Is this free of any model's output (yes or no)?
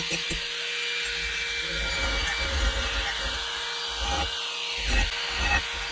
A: yes